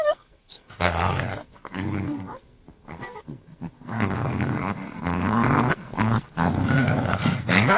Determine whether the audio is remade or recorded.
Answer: remade